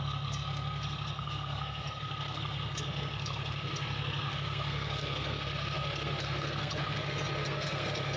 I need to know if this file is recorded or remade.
remade